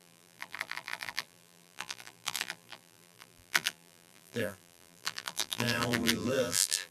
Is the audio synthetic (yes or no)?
yes